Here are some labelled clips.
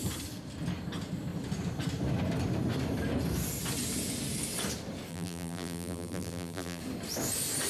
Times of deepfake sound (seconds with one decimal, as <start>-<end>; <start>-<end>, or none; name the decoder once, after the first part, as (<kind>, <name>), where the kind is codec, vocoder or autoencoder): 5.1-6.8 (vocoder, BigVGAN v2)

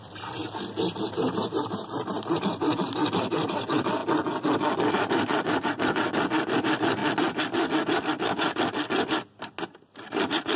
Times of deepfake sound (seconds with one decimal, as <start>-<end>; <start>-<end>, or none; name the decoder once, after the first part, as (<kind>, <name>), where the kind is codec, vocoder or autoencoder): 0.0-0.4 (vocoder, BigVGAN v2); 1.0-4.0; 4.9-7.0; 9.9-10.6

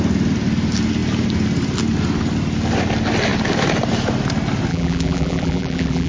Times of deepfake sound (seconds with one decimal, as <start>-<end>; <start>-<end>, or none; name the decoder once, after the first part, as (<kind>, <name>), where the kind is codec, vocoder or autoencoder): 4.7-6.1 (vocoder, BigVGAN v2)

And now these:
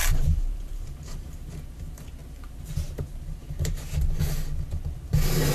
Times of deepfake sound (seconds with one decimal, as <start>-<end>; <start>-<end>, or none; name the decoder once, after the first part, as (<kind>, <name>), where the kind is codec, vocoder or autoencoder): 0.0-1.5 (vocoder, BigVGAN v2); 2.2-4.2